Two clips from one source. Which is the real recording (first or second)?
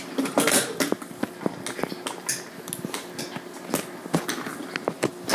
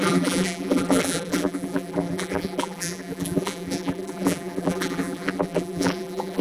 first